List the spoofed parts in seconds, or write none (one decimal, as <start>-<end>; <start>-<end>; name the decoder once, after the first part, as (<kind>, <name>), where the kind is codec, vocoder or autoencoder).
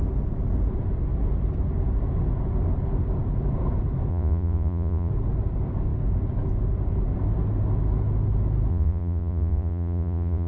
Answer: 4.1-5.1 (vocoder, Vocos); 8.7-10.5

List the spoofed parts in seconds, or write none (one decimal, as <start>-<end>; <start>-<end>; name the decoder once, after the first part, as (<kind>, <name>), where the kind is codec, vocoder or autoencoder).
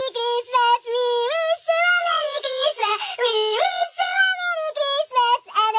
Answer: 2.0-4.2 (vocoder, WaveNeXt)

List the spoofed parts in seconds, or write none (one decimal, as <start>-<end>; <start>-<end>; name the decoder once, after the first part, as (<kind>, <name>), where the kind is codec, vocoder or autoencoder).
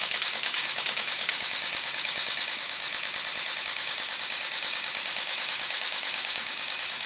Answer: 0.0-2.9 (codec, DAC); 3.6-7.1